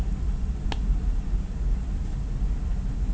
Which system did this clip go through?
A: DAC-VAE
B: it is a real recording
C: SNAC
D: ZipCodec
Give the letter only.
B